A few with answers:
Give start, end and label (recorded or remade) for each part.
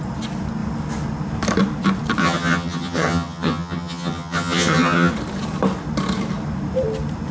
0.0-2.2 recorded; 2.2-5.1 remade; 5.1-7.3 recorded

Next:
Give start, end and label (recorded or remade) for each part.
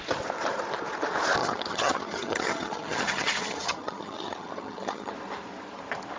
0.0-1.4 recorded; 1.4-5.1 remade; 5.1-6.2 recorded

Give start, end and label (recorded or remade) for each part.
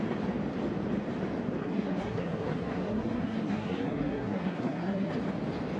0.0-1.6 recorded; 1.6-5.1 remade; 5.1-5.8 recorded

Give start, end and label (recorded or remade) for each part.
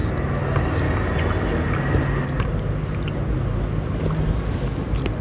0.0-5.2 recorded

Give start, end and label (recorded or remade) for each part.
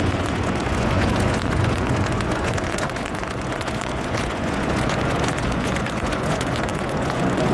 0.0-7.5 remade